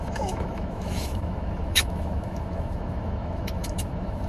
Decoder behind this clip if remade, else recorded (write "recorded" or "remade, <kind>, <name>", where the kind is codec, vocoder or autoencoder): remade, autoencoder, DAC-VAE